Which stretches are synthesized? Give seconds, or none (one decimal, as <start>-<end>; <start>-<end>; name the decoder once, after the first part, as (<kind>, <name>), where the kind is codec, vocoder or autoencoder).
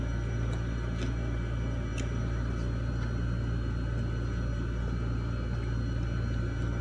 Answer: none